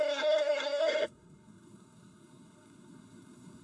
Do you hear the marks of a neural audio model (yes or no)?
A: yes